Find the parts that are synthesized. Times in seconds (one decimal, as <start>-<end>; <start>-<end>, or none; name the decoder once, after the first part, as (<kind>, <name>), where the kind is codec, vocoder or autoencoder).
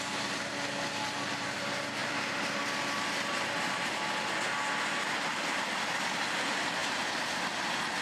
2.0-2.6 (vocoder, BigVGAN v2)